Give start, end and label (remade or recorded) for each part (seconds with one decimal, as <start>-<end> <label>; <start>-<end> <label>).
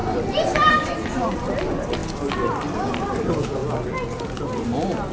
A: 0.0-0.7 recorded; 0.7-2.0 remade; 2.0-3.0 recorded; 3.0-3.6 remade; 3.6-5.1 recorded